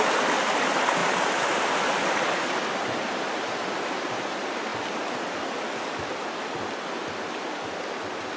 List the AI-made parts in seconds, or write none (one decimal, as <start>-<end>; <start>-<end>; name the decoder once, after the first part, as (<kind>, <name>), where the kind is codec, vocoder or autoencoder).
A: none